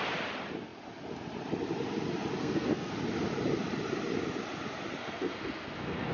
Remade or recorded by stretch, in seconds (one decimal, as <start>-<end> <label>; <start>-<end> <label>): 0.0-2.4 recorded; 2.4-2.9 remade; 2.9-5.0 recorded; 5.0-6.1 remade